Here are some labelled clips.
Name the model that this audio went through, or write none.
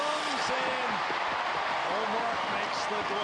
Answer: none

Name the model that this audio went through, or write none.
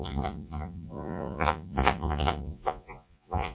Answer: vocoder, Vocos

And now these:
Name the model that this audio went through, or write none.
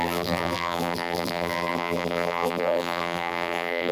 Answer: vocoder, BigVGAN v2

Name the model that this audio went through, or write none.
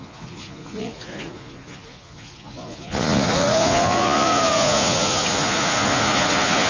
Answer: vocoder, Vocos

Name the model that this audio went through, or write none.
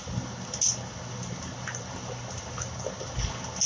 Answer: none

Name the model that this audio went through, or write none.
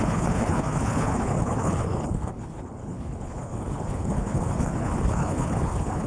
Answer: codec, HILCodec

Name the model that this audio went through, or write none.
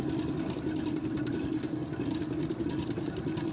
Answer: none